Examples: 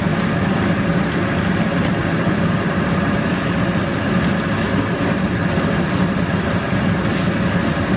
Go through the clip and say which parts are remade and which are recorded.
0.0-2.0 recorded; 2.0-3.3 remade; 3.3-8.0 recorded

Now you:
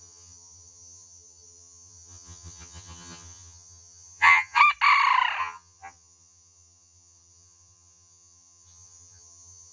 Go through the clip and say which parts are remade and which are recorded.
0.0-4.6 remade; 4.6-5.4 recorded; 5.4-9.7 remade

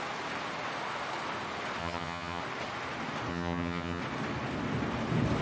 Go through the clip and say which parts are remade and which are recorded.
0.0-1.8 recorded; 1.8-2.4 remade; 2.4-3.3 recorded; 3.3-4.0 remade; 4.0-5.4 recorded

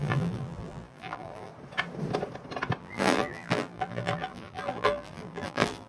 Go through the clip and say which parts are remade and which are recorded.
0.0-1.5 remade; 1.5-2.8 recorded; 2.8-5.9 remade

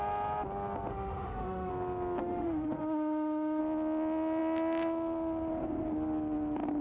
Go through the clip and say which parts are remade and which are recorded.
0.0-0.9 recorded; 0.9-1.7 remade; 1.7-2.2 recorded; 2.2-3.6 remade; 3.6-6.8 recorded

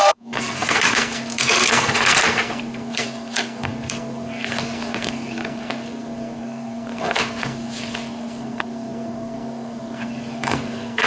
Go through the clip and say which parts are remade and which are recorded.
0.0-11.1 remade